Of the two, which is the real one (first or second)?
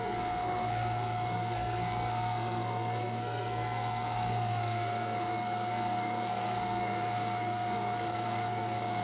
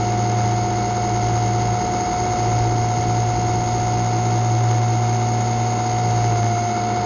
second